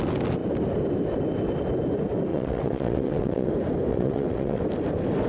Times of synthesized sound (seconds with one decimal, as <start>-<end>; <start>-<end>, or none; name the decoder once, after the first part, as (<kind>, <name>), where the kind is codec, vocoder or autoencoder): 2.3-3.5 (vocoder, WaveNeXt); 3.9-4.6